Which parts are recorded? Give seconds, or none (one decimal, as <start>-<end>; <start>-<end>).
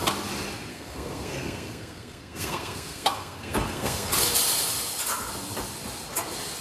0.0-0.7; 4.1-6.6